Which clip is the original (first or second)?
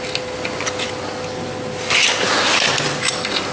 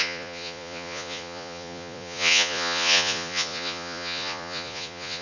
first